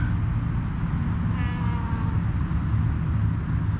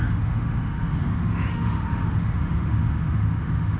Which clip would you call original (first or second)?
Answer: first